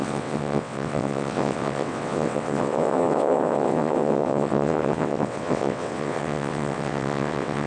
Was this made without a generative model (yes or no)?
no